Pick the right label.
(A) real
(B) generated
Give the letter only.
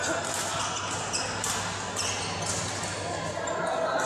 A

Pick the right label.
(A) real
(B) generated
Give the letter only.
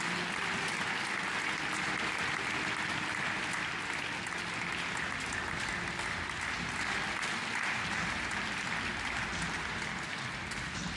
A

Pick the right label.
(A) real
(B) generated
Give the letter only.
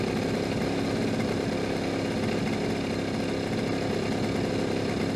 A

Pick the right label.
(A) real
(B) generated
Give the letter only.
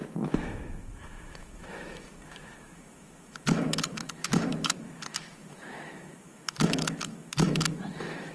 B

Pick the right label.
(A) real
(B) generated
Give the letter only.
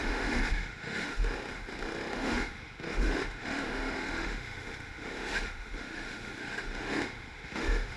B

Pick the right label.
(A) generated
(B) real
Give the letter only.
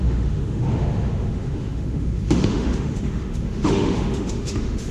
A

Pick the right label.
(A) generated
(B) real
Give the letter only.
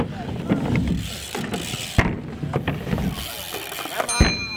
B